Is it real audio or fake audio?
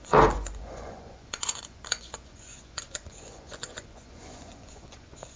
fake